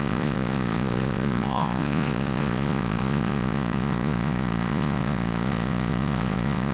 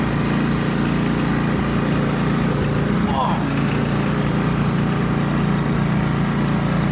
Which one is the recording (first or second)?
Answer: second